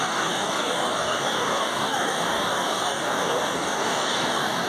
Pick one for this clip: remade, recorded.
remade